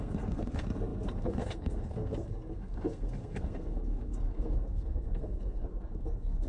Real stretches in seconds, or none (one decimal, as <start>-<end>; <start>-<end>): none